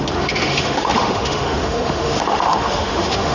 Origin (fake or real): fake